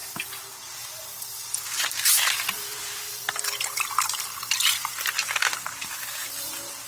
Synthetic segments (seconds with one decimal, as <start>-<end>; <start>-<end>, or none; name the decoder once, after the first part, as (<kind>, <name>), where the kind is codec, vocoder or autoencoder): 0.0-4.1 (vocoder, BigVGAN v2); 6.2-6.9